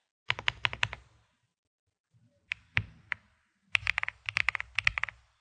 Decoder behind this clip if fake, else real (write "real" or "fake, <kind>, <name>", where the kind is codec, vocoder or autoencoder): real